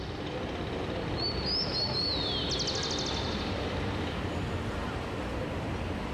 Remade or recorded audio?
recorded